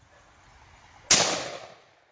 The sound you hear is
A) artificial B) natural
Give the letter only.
B